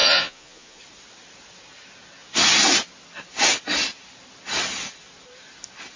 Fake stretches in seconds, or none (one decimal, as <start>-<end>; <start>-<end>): 0.0-0.8

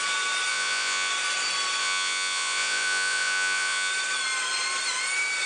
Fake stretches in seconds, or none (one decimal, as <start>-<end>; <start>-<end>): 0.5-1.1; 1.8-3.9